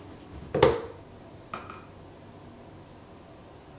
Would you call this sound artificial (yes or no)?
no